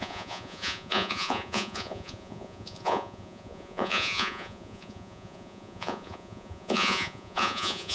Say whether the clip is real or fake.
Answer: fake